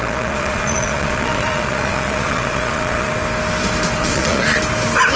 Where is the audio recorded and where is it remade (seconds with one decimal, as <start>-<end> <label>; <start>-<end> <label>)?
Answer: 0.0-3.1 remade; 3.1-4.0 recorded; 4.0-4.6 remade; 4.6-5.2 recorded